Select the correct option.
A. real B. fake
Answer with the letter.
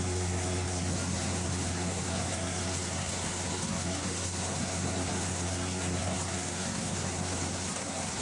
B